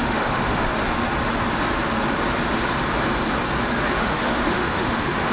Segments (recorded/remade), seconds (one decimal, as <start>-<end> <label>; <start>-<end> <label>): 0.0-0.7 remade; 0.7-3.9 recorded; 3.9-5.3 remade